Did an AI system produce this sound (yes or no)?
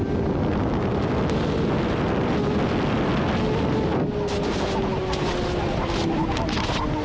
no